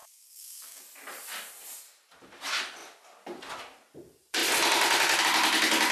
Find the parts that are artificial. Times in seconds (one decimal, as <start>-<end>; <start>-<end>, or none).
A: 0.0-0.8